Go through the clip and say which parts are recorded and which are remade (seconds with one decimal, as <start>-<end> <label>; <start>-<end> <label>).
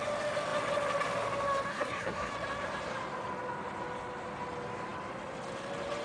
0.0-1.7 recorded; 1.7-2.3 remade; 2.3-6.0 recorded